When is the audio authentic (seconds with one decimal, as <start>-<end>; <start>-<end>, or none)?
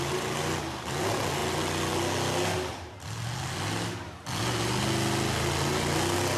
0.0-6.4